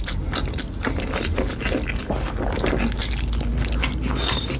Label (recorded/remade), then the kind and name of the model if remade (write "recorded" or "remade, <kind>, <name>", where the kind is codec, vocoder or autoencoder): recorded